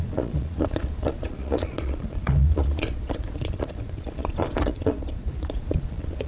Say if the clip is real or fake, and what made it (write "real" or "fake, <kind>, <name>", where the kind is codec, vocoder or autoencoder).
fake, vocoder, Vocos